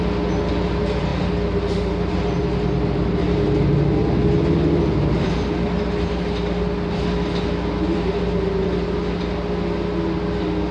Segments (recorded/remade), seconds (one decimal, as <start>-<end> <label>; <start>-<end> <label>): 0.0-10.7 recorded